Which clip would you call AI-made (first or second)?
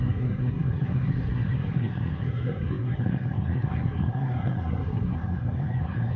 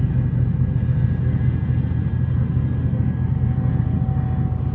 first